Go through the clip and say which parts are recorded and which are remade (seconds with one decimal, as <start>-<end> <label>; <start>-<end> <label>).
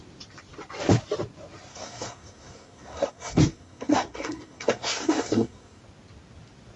0.0-1.7 recorded; 1.7-5.8 remade; 5.8-6.8 recorded